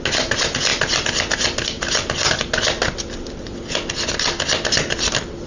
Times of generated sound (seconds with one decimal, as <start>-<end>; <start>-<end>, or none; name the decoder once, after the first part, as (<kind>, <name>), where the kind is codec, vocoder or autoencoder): none